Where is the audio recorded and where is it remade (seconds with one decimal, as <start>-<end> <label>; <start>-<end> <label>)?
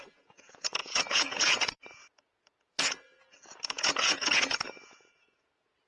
0.0-5.9 remade